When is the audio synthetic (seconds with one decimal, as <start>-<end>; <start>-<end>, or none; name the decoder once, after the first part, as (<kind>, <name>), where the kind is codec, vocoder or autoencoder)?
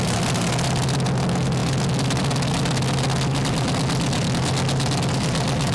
none